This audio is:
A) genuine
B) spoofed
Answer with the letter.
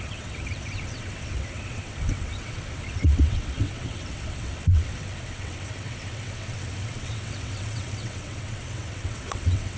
B